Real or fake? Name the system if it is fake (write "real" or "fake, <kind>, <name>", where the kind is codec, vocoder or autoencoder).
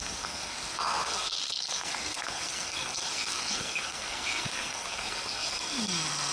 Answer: fake, codec, SNAC